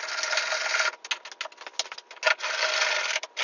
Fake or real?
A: real